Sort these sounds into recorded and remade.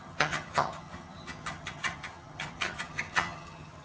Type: remade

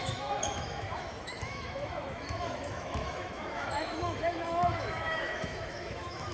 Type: remade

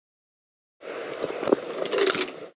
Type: recorded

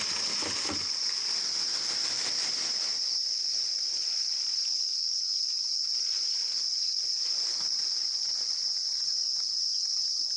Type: recorded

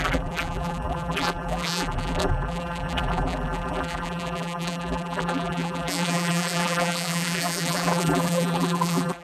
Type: remade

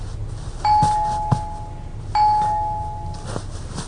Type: recorded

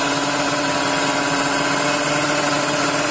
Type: recorded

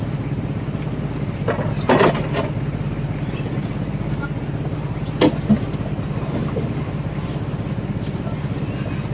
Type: recorded